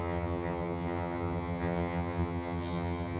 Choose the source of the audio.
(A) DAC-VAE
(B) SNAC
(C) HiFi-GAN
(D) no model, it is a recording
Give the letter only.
C